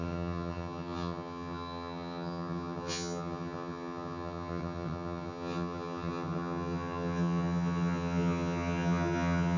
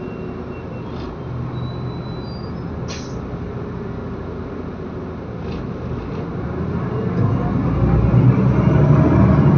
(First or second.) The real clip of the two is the second